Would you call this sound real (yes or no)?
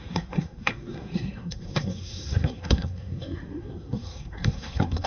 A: no